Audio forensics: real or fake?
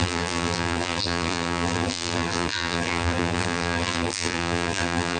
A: fake